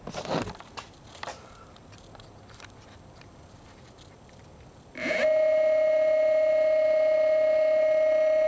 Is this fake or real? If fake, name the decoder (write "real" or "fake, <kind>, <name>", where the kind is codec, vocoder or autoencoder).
real